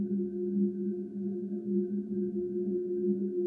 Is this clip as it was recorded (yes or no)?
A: no